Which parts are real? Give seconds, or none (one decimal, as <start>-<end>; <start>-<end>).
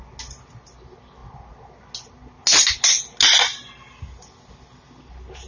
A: 0.0-5.5